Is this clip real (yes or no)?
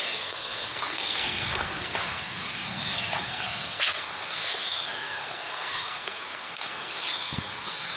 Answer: no